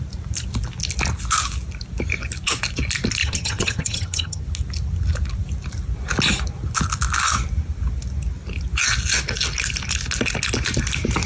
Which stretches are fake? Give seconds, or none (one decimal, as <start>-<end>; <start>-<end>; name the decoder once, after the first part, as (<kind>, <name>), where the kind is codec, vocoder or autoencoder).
3.2-4.4 (vocoder, HiFi-GAN)